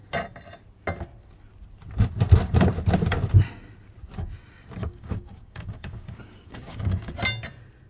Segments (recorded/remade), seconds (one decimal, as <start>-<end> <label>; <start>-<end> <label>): 0.0-4.8 recorded; 4.8-7.1 remade; 7.1-7.9 recorded